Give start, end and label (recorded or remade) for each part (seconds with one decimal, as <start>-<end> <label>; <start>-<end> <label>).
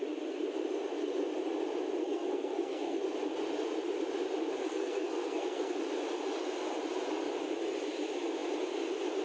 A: 0.0-2.0 recorded; 2.0-3.0 remade; 3.0-4.6 recorded; 4.6-5.8 remade; 5.8-9.2 recorded